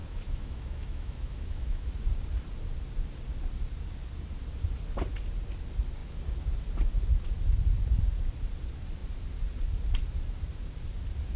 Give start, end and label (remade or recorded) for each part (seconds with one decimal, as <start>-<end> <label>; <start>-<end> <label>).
0.0-1.9 remade; 1.9-11.4 recorded